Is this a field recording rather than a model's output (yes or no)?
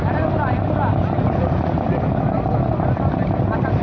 no